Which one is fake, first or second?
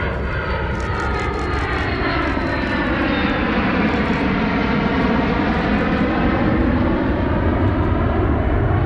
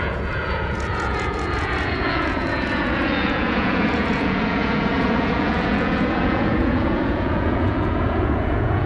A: second